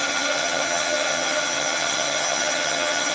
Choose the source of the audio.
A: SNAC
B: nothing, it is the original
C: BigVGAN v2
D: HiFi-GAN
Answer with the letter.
D